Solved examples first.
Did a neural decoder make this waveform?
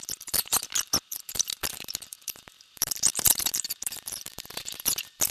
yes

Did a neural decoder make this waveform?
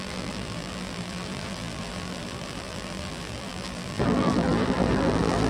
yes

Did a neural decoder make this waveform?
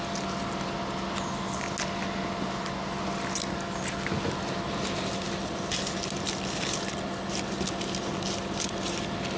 no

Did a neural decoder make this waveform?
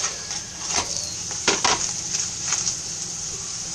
no